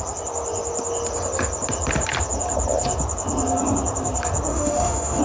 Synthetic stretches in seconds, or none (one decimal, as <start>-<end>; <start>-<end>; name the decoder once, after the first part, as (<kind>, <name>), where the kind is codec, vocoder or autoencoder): 4.5-5.2 (autoencoder, DAC-VAE)